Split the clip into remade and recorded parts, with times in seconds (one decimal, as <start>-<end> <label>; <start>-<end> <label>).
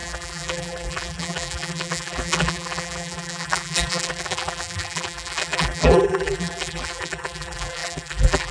0.0-8.5 remade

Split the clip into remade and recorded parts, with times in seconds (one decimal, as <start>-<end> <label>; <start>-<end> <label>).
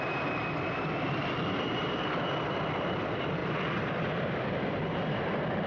0.0-0.4 remade; 0.4-1.1 recorded; 1.1-5.7 remade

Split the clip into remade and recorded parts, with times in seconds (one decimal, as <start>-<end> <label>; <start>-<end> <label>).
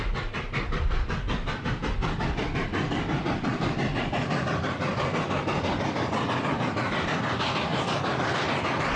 0.0-9.0 recorded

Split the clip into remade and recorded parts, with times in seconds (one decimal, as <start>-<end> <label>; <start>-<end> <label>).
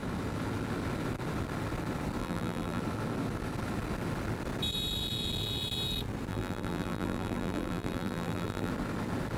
0.0-2.2 recorded; 2.2-2.8 remade; 2.8-6.3 recorded; 6.3-8.7 remade; 8.7-9.4 recorded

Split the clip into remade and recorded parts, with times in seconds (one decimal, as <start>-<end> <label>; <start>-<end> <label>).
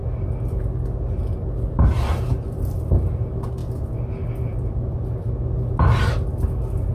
0.0-6.9 recorded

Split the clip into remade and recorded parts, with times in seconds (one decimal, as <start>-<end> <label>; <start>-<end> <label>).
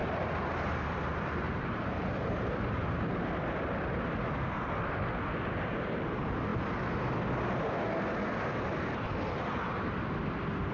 0.0-3.0 remade; 3.0-10.7 recorded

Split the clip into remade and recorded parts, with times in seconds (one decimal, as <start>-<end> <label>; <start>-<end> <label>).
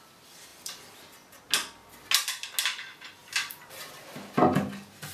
0.0-3.2 recorded; 3.2-3.7 remade; 3.7-5.1 recorded